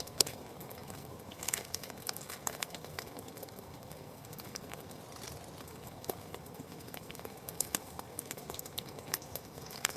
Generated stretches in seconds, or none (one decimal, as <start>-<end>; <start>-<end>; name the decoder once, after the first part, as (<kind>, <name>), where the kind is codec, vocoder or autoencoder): 0.0-5.0 (codec, SNAC); 5.6-10.0